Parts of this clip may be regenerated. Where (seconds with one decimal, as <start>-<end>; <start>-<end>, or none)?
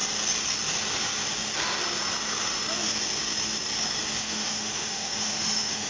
4.2-5.9